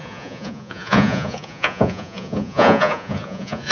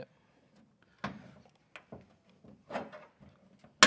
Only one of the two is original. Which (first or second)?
second